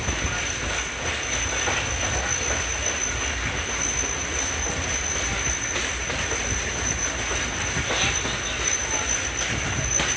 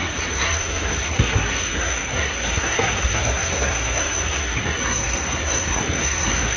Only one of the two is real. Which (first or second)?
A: first